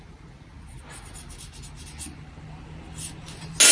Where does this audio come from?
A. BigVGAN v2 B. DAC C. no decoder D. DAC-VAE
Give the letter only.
C